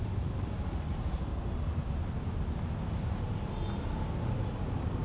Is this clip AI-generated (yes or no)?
no